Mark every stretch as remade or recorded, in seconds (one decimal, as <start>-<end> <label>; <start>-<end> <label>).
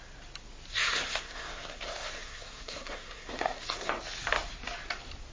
0.0-0.7 recorded; 0.7-3.9 remade; 3.9-5.3 recorded